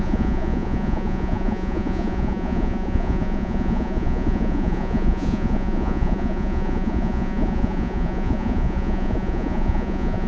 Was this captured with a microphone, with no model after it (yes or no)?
no